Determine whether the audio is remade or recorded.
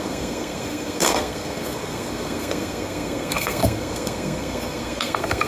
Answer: remade